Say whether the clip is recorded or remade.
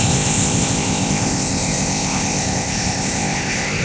remade